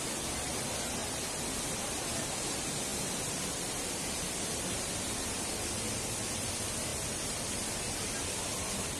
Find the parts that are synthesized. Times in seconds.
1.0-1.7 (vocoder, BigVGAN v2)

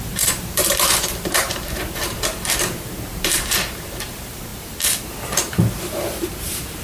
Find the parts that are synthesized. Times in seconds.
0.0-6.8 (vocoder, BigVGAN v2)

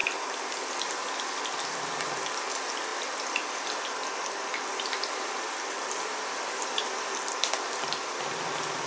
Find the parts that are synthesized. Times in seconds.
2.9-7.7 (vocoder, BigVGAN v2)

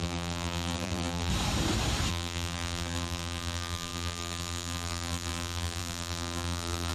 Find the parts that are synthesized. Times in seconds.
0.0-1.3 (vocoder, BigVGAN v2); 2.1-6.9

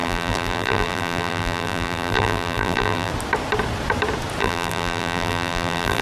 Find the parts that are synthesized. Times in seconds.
0.0-3.1 (vocoder, BigVGAN v2); 4.4-6.0